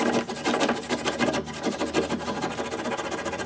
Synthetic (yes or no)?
no